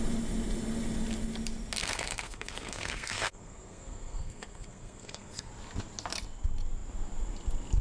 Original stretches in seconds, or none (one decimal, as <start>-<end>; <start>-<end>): 0.0-1.8; 5.5-7.8